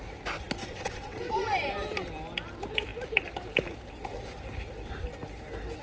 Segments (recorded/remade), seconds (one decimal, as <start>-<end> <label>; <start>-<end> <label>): 0.0-0.6 recorded; 0.6-1.3 remade; 1.3-5.8 recorded